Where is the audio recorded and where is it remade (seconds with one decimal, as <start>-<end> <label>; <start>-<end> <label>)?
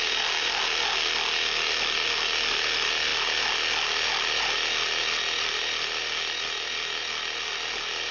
0.0-8.1 recorded